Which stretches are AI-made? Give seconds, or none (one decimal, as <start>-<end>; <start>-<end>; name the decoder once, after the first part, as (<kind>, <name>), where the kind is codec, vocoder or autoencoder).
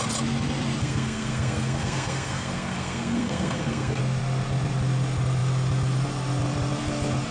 0.8-4.0 (codec, SNAC)